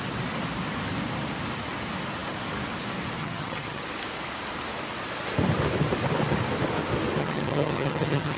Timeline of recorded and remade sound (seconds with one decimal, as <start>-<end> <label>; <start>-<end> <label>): 0.0-3.2 recorded; 3.2-3.8 remade; 3.8-7.2 recorded; 7.2-8.4 remade